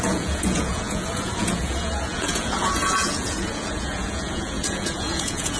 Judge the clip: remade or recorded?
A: remade